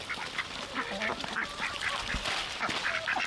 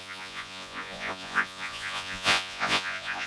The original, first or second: first